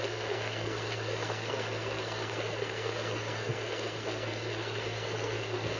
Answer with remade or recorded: remade